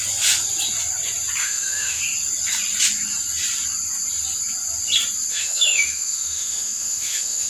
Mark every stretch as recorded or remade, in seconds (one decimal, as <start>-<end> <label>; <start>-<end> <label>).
0.0-1.4 recorded; 1.4-2.0 remade; 2.0-5.3 recorded; 5.3-7.5 remade